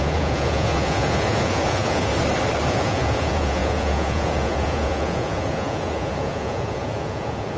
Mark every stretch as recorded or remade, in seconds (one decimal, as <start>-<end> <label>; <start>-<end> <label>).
0.0-2.1 remade; 2.1-2.7 recorded; 2.7-7.6 remade